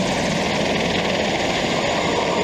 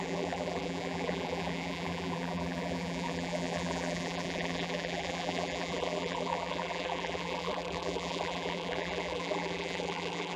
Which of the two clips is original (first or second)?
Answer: first